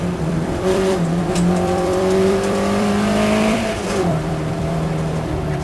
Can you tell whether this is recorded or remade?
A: remade